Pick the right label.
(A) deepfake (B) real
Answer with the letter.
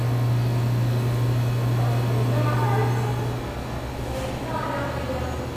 B